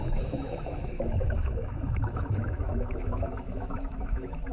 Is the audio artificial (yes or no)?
yes